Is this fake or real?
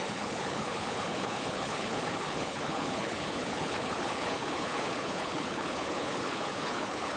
fake